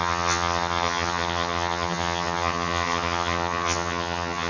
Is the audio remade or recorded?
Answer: remade